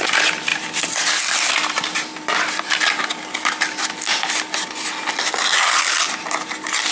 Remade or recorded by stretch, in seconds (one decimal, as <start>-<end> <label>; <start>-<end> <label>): 0.0-0.5 recorded; 0.5-3.1 remade; 3.1-6.9 recorded